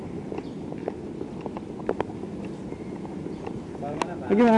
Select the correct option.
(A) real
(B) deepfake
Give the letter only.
A